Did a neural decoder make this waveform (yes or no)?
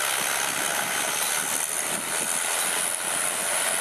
no